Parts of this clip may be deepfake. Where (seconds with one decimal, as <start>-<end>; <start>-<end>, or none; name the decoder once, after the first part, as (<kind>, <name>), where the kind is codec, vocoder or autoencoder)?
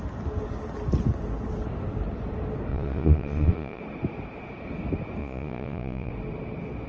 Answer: 2.7-3.8 (vocoder, Vocos); 5.2-6.1